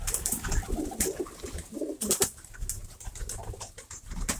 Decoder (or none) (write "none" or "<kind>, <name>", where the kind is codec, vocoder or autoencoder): none